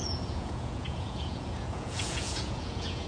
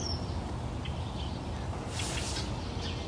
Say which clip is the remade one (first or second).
first